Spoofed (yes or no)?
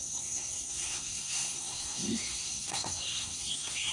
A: yes